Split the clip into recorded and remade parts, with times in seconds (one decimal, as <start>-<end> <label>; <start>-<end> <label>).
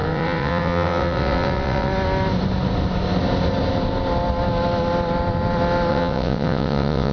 0.0-1.9 remade; 1.9-5.9 recorded; 5.9-7.1 remade